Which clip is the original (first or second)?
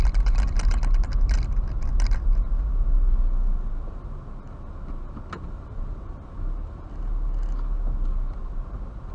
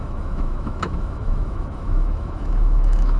first